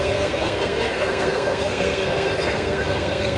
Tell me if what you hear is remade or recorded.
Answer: remade